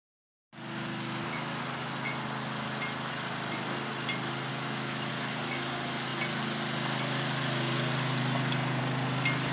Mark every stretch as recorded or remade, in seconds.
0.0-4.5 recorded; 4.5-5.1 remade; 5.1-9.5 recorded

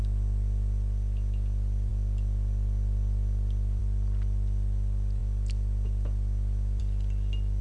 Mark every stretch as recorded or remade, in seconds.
0.0-7.6 recorded

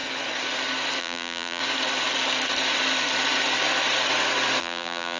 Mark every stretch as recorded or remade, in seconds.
0.0-1.0 recorded; 1.0-1.6 remade; 1.6-4.6 recorded; 4.6-5.2 remade

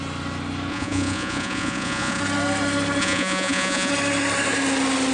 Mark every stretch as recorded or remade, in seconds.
0.0-0.7 recorded; 0.7-2.2 remade; 2.2-3.0 recorded; 3.0-3.9 remade; 3.9-5.1 recorded

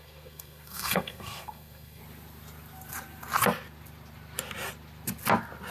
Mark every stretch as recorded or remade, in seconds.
0.0-2.0 remade; 2.0-5.7 recorded

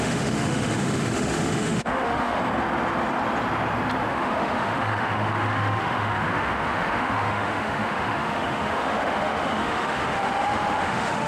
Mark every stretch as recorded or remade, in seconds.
0.0-2.4 remade; 2.4-4.1 recorded; 4.1-11.3 remade